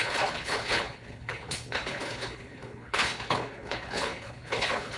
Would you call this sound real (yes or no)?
no